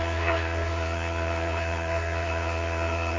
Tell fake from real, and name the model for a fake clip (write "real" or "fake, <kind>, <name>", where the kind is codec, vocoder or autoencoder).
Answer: fake, codec, SNAC